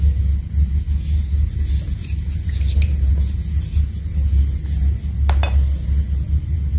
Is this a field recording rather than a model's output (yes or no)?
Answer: yes